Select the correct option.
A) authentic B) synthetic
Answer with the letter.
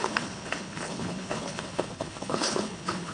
B